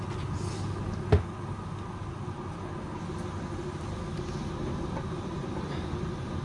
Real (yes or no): yes